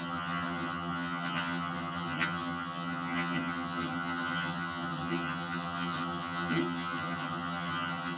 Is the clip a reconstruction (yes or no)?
yes